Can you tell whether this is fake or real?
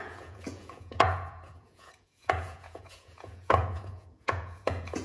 fake